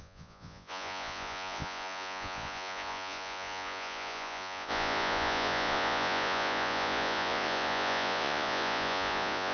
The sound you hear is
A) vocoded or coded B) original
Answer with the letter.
A